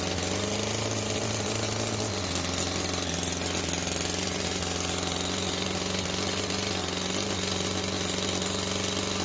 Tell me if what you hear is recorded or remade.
recorded